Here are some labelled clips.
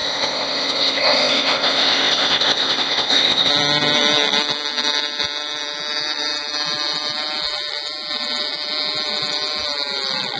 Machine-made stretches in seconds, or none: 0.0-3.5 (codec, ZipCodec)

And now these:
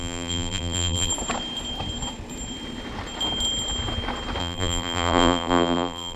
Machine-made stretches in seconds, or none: 0.0-1.1 (vocoder, BigVGAN v2); 4.4-6.2

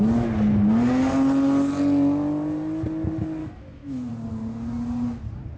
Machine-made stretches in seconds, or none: 3.4-4.1 (autoencoder, DAC-VAE)

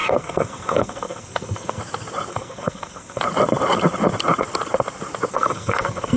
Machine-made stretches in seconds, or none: 0.0-1.8 (codec, SNAC); 2.3-3.2; 5.3-6.2

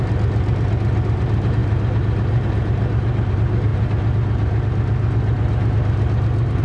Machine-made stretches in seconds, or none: none

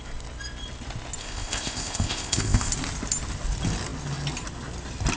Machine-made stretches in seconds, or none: 1.2-2.7 (codec, ZipCodec)